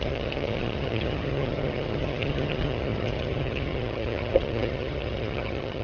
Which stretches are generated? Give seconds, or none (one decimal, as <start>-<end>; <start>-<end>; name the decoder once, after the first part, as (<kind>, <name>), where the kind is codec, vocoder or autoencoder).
0.0-5.8 (vocoder, HiFi-GAN)